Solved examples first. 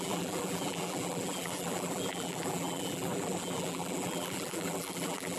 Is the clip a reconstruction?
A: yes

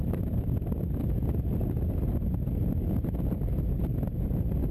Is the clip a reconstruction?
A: no